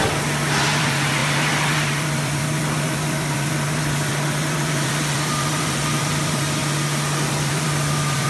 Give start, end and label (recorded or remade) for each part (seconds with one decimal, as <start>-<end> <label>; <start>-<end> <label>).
0.0-0.6 recorded; 0.6-6.6 remade; 6.6-7.3 recorded; 7.3-8.3 remade